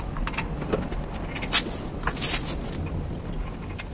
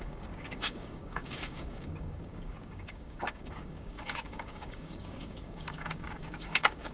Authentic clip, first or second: first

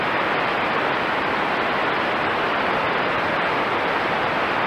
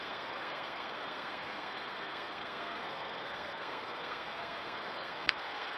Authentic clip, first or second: first